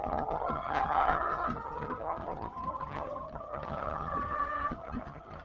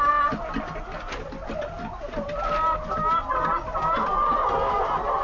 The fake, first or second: first